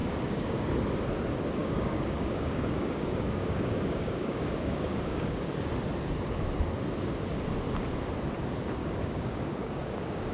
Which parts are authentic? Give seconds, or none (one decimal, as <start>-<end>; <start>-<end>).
0.7-1.6; 5.5-8.8